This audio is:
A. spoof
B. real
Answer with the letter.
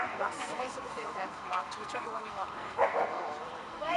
A